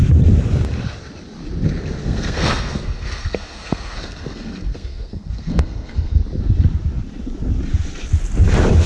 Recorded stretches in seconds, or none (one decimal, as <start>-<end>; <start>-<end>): 0.0-2.0; 6.2-8.9